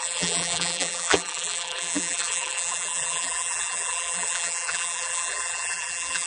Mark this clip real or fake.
fake